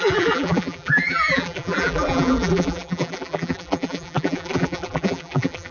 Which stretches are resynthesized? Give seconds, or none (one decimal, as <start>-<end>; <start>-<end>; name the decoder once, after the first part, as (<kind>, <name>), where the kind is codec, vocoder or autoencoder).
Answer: 0.0-5.7 (vocoder, BigVGAN v2)